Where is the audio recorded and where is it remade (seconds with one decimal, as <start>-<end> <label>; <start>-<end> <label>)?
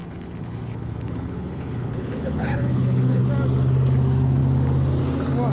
0.0-3.2 remade; 3.2-5.5 recorded